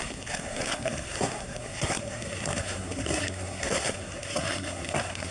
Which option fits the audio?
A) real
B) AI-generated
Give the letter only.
B